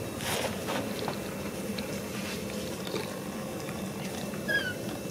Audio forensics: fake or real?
real